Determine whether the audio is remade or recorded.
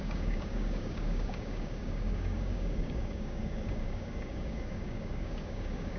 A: remade